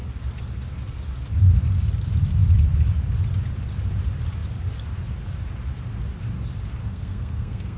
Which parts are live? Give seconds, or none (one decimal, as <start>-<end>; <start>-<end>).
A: 0.0-6.8